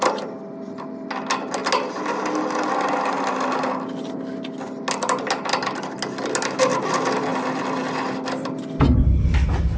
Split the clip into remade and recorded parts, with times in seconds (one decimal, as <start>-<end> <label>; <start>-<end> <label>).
0.0-9.8 recorded